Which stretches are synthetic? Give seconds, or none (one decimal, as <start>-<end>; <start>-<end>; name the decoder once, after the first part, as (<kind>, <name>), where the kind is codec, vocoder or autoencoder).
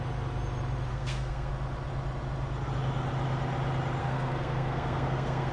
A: 0.9-1.5 (codec, SNAC); 4.0-5.5